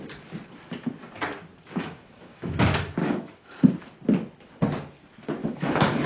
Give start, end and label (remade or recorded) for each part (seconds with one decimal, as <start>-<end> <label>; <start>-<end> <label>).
0.0-1.7 recorded; 1.7-2.6 remade; 2.6-3.0 recorded; 3.0-3.7 remade; 3.7-5.4 recorded; 5.4-6.1 remade